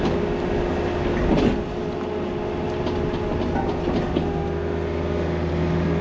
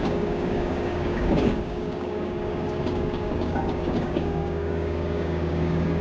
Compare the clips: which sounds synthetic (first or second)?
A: second